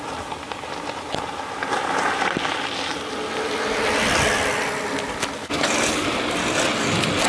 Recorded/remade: recorded